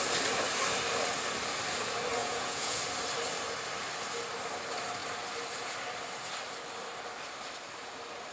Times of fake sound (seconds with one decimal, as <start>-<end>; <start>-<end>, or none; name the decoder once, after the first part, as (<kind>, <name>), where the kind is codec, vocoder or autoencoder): 2.2-2.8 (vocoder, Vocos)